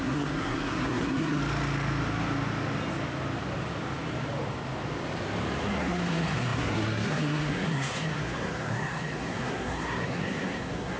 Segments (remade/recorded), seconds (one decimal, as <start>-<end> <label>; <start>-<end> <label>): 0.0-1.4 remade; 1.4-5.6 recorded; 5.6-11.0 remade